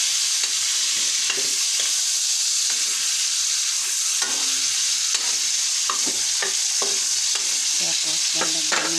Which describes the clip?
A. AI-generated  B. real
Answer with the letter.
B